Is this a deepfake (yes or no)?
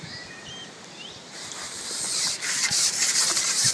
yes